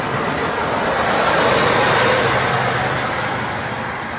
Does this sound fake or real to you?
real